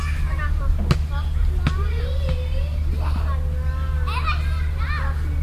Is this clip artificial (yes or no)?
no